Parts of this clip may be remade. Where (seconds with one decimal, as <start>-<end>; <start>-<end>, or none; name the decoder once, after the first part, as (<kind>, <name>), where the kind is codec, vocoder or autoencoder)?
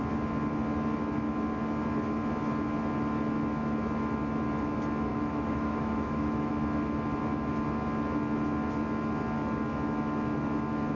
5.1-6.5 (autoencoder, DAC-VAE)